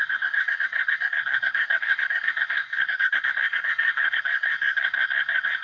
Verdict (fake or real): fake